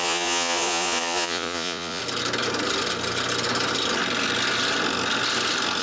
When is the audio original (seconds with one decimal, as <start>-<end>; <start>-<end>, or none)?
2.0-5.8